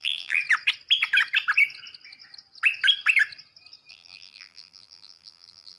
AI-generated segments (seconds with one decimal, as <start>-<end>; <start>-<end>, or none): 0.0-0.4; 3.9-5.8